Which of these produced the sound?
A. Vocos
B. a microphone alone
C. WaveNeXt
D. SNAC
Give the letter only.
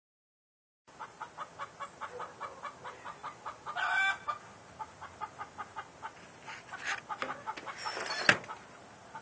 B